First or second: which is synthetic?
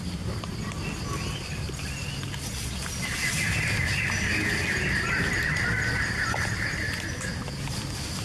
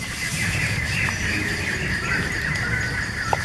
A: second